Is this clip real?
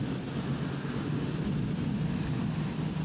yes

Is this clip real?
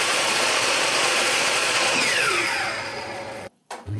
no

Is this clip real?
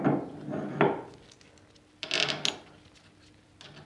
yes